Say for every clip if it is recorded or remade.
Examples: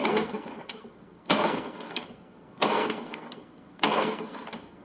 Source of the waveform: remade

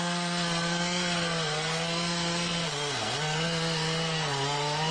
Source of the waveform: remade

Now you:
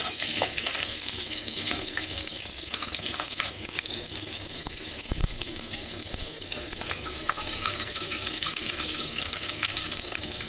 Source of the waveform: remade